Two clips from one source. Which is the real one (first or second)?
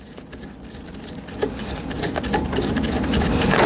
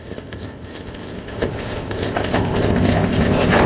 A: first